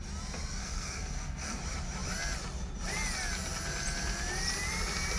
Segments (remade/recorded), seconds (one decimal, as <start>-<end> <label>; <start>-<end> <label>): 0.0-0.6 recorded; 0.6-1.6 remade; 1.6-5.2 recorded